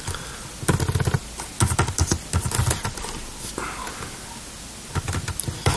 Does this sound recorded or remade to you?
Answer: recorded